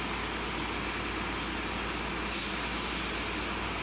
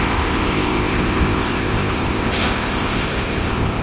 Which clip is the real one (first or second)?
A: first